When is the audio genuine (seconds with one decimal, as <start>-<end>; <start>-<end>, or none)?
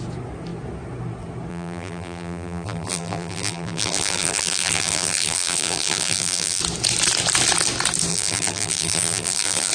0.0-1.5; 6.6-8.1